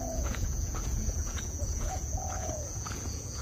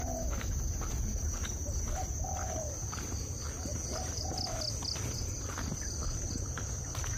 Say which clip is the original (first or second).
second